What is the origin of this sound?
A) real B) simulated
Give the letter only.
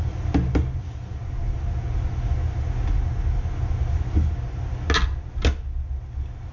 A